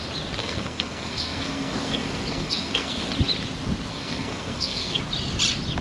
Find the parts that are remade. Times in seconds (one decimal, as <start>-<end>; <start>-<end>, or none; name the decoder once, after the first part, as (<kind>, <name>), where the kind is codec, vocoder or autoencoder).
0.4-3.1 (codec, SNAC); 3.9-5.0